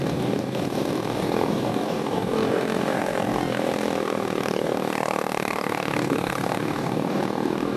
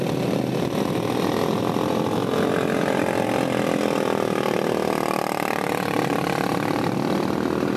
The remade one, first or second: first